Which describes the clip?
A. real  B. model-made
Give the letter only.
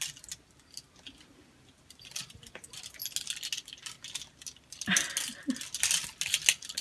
A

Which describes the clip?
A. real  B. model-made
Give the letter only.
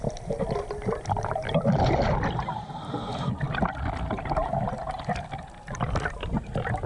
A